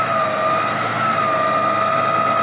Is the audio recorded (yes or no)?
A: yes